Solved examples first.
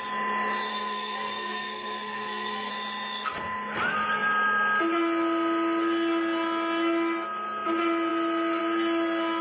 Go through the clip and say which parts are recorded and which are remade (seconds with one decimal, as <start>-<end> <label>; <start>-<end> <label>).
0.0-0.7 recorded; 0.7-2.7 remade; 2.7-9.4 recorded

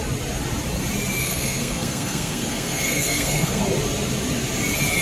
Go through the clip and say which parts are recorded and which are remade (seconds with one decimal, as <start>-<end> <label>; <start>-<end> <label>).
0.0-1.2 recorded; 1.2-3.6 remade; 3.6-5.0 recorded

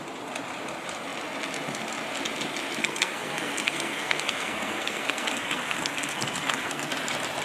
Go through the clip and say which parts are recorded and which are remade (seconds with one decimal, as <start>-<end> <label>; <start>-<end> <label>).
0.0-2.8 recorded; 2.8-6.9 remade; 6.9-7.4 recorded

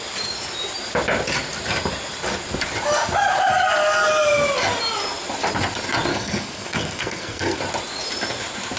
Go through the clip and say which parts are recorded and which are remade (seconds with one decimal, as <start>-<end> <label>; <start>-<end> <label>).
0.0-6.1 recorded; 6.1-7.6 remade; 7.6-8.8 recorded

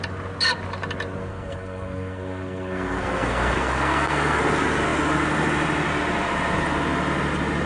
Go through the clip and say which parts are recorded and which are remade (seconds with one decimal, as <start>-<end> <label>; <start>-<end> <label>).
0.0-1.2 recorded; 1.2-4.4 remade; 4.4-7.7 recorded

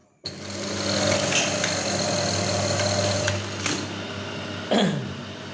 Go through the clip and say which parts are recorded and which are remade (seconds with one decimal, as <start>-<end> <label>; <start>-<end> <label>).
0.0-5.5 recorded

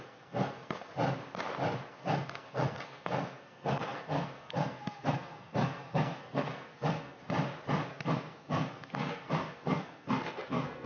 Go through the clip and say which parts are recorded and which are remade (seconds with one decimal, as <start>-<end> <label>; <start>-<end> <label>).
0.0-0.9 remade; 0.9-1.9 recorded; 1.9-7.2 remade; 7.2-7.9 recorded; 7.9-10.9 remade